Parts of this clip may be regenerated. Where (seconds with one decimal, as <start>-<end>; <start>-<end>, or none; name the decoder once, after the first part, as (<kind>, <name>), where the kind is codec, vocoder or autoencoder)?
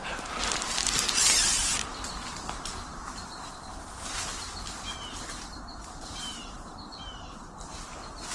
2.9-3.6 (vocoder, BigVGAN v2); 5.7-6.8